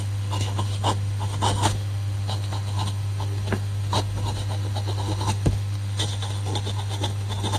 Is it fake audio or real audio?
fake